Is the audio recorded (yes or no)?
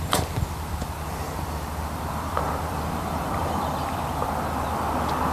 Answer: no